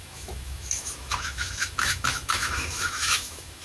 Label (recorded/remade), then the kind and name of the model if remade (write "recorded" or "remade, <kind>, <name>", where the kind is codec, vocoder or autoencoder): remade, autoencoder, DAC-VAE